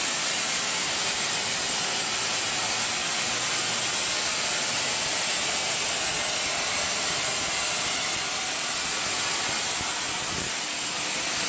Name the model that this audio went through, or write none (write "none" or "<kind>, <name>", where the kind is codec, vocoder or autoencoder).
none